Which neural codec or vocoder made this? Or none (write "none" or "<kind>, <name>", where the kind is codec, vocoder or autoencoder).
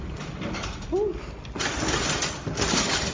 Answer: none